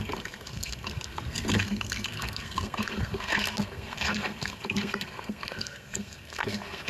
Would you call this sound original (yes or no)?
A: no